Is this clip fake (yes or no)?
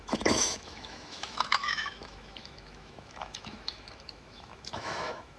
yes